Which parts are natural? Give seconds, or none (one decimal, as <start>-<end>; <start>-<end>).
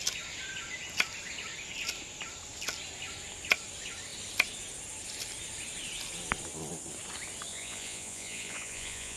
0.0-7.5